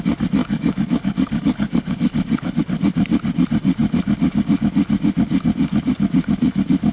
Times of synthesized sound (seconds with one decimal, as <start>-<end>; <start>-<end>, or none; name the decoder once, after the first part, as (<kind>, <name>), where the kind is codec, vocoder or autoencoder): 0.4-2.6 (codec, DAC)